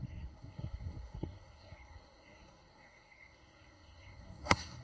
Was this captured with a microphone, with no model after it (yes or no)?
no